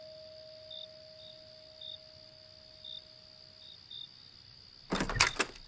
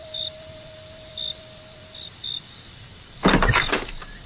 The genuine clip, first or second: first